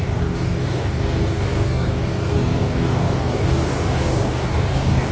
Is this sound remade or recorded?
remade